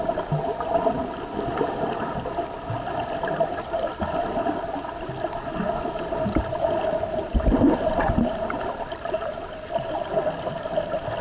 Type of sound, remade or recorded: recorded